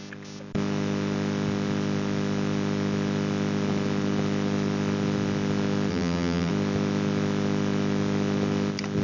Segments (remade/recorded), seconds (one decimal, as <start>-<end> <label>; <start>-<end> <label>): 0.0-5.9 recorded; 5.9-6.5 remade; 6.5-9.0 recorded